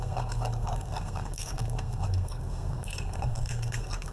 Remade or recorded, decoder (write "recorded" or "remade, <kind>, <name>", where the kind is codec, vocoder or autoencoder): remade, codec, SNAC